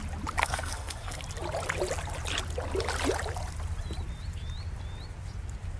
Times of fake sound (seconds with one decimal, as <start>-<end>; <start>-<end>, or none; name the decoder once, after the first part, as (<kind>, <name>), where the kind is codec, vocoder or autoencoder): 0.4-1.2 (codec, SNAC)